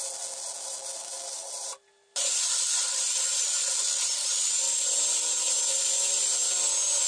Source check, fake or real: real